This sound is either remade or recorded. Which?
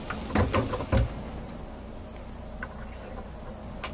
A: recorded